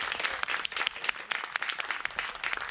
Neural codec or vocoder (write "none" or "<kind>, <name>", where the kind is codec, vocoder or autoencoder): none